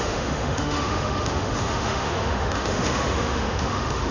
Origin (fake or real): fake